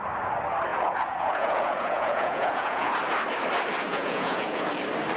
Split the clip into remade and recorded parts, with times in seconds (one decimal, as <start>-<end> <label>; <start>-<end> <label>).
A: 0.0-0.7 recorded; 0.7-2.9 remade; 2.9-3.9 recorded; 3.9-4.7 remade; 4.7-5.2 recorded